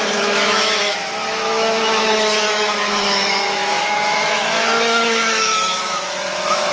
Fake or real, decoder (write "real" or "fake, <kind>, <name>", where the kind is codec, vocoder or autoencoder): fake, autoencoder, DAC-VAE